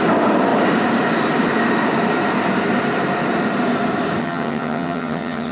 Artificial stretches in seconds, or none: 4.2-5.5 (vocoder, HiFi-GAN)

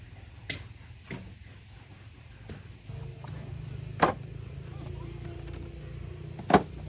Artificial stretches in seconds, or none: none

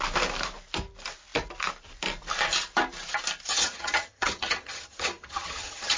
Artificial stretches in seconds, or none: 3.5-6.0 (vocoder, HiFi-GAN)

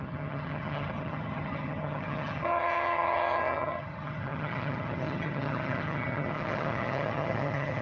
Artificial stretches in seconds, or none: 0.0-7.8 (vocoder, HiFi-GAN)

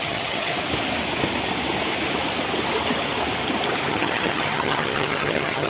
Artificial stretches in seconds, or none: 0.0-0.5 (vocoder, HiFi-GAN); 3.9-5.7

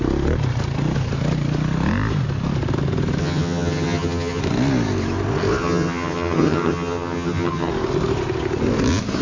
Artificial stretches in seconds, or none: 3.2-4.4 (vocoder, HiFi-GAN); 5.6-7.7

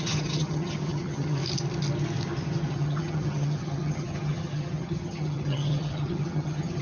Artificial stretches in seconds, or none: 0.0-1.4 (vocoder, HiFi-GAN); 2.7-6.8

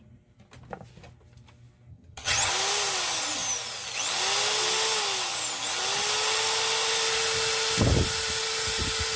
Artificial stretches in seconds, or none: 1.9-2.5 (vocoder, HiFi-GAN)